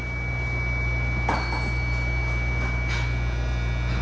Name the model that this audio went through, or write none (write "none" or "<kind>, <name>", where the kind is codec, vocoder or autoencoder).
none